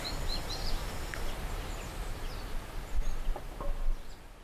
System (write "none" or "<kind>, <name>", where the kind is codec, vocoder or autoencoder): none